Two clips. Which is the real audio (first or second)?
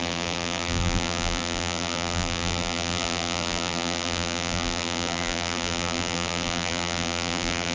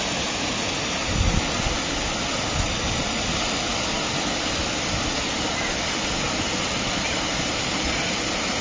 second